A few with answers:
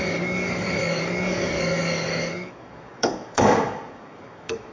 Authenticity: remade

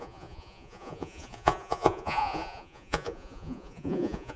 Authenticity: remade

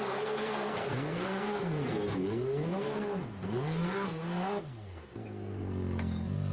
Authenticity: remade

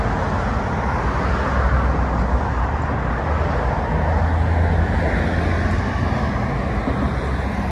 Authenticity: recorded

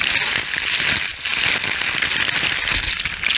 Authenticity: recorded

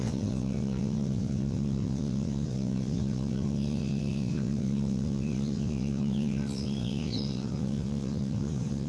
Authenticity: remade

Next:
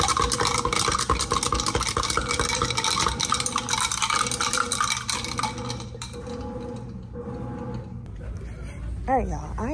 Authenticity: recorded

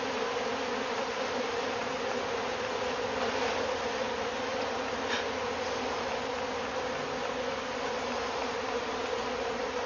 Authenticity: recorded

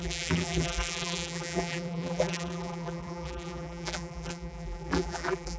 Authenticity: remade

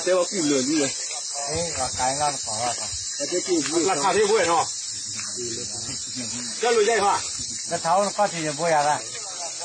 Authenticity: recorded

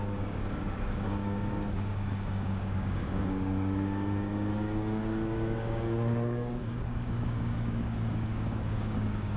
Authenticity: remade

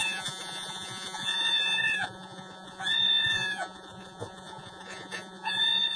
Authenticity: remade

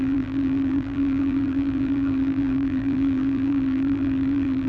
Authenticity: remade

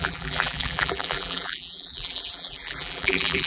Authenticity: remade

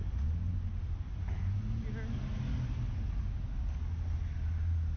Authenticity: recorded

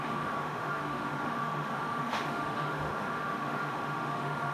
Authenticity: remade